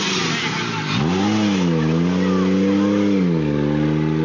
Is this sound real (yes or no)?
yes